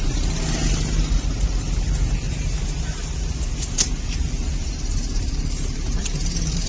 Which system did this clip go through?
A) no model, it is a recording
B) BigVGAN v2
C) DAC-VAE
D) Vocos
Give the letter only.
B